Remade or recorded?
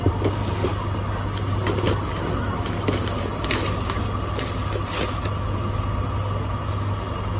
recorded